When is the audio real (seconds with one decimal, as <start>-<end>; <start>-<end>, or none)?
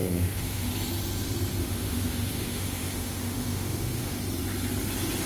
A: 0.7-1.6; 4.2-5.3